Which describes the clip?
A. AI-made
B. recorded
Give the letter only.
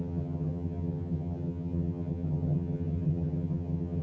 A